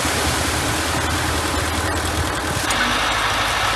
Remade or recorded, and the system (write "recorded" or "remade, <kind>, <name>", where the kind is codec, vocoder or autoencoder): recorded